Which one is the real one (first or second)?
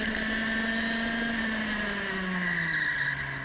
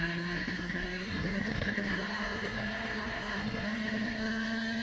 first